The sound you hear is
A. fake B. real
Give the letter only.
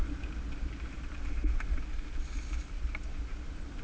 B